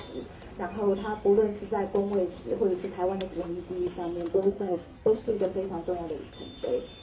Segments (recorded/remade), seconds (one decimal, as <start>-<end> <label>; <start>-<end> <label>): 0.0-4.3 recorded; 4.3-5.4 remade; 5.4-7.0 recorded